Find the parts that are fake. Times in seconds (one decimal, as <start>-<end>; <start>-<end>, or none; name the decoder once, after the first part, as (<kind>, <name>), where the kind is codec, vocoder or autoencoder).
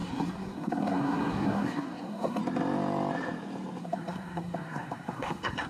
0.0-2.4 (codec, SNAC); 3.8-5.7